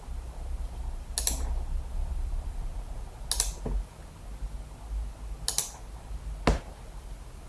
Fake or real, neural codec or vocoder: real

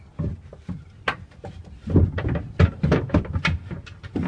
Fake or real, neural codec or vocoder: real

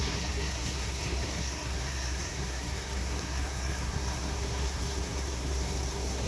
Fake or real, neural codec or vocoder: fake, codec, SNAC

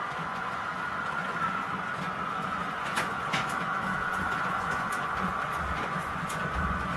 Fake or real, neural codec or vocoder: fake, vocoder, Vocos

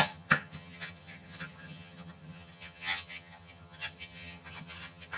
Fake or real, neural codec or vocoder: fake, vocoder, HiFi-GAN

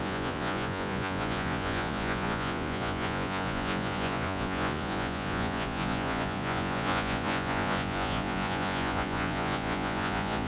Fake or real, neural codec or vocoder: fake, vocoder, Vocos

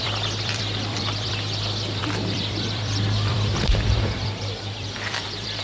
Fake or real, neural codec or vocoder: fake, vocoder, BigVGAN v2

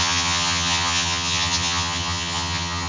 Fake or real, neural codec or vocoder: fake, vocoder, HiFi-GAN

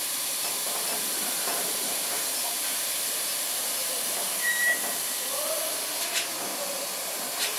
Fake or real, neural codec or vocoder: fake, vocoder, BigVGAN v2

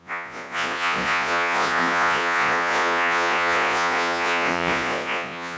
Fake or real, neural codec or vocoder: fake, vocoder, Vocos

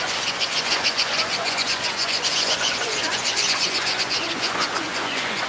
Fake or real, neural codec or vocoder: fake, vocoder, Vocos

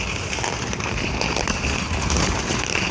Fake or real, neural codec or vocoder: fake, vocoder, BigVGAN v2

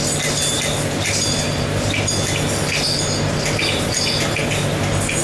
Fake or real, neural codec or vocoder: real